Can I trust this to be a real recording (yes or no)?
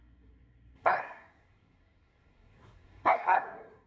no